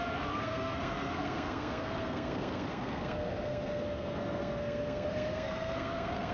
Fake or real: fake